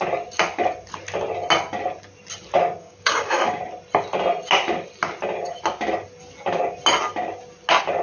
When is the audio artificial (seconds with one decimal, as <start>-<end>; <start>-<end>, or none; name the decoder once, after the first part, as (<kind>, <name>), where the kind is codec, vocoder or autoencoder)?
2.8-3.6 (codec, DAC)